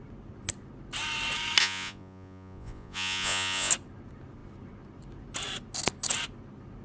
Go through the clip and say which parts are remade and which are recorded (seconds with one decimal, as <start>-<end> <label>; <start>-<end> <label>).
0.0-1.6 recorded; 1.6-3.7 remade; 3.7-6.8 recorded